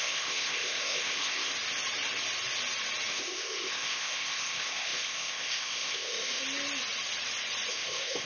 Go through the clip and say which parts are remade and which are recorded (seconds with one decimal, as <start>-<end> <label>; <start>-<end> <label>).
0.0-1.5 remade; 1.5-3.1 recorded; 3.1-6.4 remade; 6.4-7.7 recorded; 7.7-8.3 remade